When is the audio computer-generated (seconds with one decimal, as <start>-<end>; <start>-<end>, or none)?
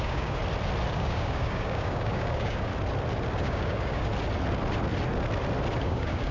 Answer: 0.0-0.4; 0.9-2.7; 3.4-4.1; 5.8-6.3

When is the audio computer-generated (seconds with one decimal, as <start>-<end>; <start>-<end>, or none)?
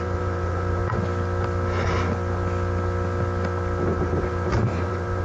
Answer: 0.0-0.8; 3.9-5.2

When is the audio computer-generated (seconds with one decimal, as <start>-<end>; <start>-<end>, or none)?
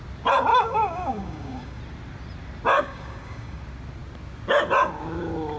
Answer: 0.5-1.8; 2.7-3.6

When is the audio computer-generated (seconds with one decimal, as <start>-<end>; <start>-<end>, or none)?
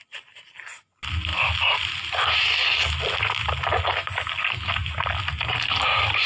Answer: none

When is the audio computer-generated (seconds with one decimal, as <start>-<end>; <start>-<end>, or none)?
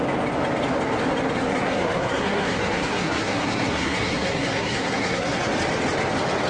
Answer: 1.5-5.4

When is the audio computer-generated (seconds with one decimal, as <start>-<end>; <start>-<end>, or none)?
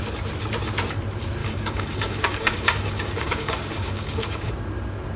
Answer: 1.4-4.5